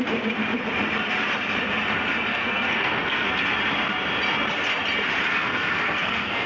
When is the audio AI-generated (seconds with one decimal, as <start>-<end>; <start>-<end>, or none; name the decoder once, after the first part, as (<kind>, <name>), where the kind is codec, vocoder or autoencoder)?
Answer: 2.3-3.3 (codec, SNAC); 5.3-6.5